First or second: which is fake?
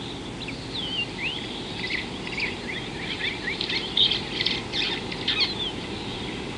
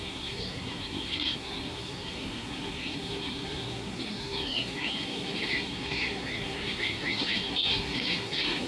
second